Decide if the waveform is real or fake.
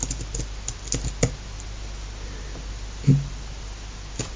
real